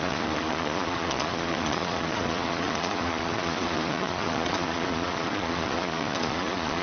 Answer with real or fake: fake